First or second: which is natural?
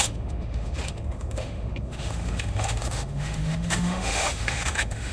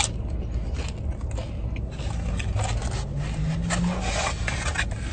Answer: second